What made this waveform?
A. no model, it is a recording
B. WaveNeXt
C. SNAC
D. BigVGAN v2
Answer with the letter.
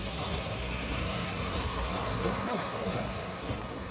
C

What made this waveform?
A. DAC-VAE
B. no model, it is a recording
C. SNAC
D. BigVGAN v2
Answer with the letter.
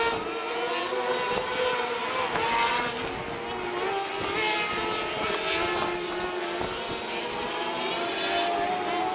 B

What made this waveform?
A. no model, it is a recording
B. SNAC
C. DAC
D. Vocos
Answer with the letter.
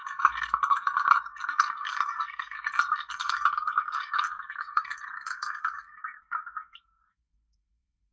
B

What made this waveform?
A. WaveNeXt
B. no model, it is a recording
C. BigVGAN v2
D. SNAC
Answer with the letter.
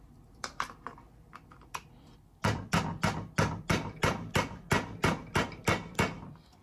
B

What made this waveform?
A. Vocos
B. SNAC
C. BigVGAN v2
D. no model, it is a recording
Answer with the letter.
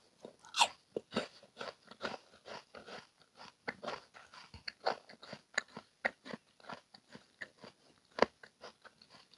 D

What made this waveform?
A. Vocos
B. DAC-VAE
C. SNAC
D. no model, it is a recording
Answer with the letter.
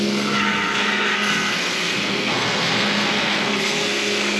C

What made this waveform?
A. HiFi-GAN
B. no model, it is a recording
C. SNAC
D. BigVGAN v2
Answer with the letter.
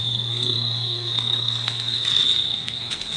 C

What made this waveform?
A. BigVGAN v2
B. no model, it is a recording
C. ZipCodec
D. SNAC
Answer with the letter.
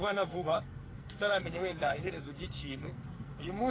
D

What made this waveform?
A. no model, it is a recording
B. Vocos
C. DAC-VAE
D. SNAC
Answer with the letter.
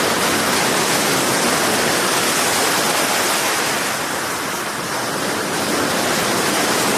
A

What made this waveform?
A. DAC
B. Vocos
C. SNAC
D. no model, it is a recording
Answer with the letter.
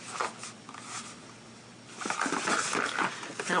D